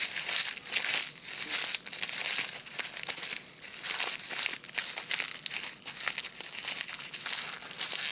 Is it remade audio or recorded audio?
recorded